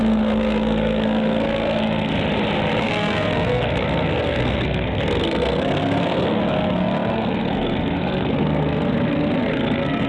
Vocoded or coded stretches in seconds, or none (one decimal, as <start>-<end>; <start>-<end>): 0.0-2.1; 2.8-10.1